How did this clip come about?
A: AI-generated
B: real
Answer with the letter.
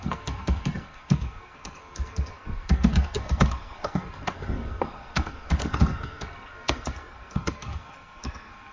A